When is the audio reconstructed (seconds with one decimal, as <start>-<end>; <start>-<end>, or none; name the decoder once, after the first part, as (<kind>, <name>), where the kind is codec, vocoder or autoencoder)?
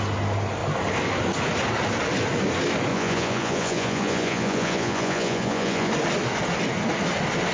2.9-5.9 (vocoder, Vocos)